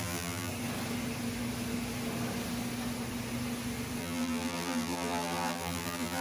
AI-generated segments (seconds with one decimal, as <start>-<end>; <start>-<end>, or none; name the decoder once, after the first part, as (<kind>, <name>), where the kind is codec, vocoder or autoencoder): 0.0-0.5 (vocoder, BigVGAN v2); 4.0-6.2

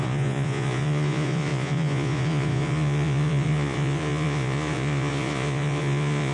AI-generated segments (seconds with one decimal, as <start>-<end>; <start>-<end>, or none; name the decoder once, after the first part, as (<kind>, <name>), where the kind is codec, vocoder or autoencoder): 0.0-6.3 (vocoder, Vocos)

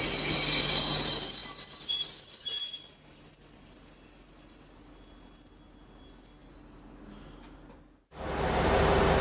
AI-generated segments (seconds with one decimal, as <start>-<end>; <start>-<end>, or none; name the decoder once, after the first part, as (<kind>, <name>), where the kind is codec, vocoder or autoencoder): none

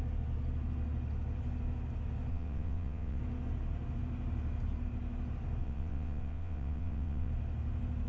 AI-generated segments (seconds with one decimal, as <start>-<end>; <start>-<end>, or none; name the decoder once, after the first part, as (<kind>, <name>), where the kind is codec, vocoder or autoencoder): 2.3-3.2 (vocoder, WaveNeXt); 5.6-7.3

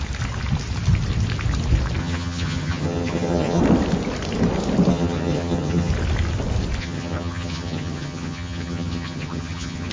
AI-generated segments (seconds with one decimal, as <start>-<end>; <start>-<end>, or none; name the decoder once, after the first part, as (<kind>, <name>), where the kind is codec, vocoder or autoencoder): 2.0-3.6 (vocoder, HiFi-GAN); 4.9-5.9; 6.8-9.9

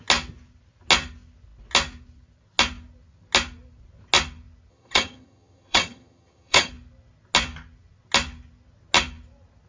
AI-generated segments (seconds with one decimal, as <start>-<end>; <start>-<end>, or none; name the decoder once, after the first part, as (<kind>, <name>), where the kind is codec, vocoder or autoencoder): 4.7-6.7 (vocoder, HiFi-GAN)